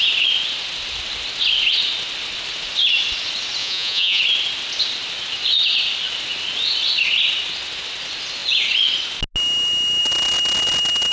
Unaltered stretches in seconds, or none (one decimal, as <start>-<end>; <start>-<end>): 0.0-3.6; 4.2-11.1